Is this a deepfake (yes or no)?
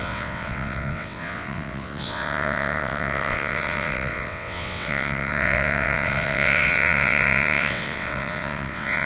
yes